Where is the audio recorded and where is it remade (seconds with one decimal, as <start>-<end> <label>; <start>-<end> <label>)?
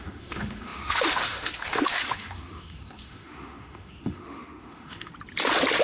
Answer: 0.0-5.1 remade; 5.1-5.8 recorded